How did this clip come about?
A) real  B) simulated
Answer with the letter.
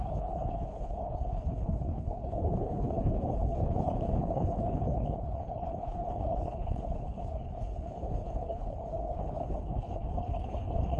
B